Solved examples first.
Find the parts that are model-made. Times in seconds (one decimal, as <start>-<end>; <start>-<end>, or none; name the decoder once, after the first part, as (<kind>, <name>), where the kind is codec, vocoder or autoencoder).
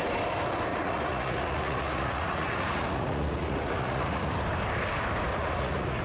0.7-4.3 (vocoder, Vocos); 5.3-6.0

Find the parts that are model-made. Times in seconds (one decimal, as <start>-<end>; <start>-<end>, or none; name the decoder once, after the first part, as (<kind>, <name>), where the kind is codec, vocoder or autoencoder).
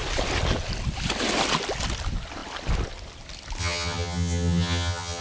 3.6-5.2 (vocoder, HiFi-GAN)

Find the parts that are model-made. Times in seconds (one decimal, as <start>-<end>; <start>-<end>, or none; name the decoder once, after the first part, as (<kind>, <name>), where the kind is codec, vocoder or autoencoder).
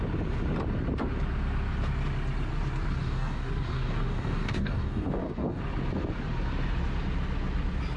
3.0-5.6 (codec, DAC)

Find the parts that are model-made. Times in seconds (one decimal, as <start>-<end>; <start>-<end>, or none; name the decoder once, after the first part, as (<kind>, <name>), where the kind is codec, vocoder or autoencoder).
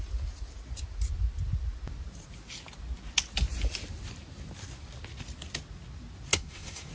6.3-6.9 (codec, SNAC)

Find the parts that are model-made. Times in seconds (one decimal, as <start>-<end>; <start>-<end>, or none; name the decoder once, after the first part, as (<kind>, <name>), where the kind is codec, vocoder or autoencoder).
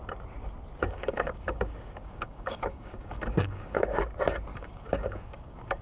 0.8-4.0 (codec, DAC); 4.5-5.8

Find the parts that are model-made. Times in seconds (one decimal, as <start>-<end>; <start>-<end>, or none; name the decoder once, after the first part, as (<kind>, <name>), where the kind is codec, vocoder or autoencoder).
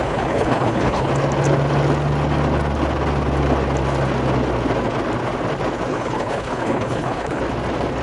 0.0-1.1 (codec, HILCodec); 5.9-7.4